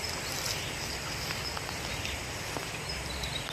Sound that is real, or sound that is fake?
real